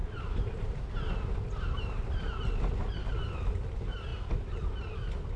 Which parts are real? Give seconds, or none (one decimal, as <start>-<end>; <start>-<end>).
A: 1.3-5.4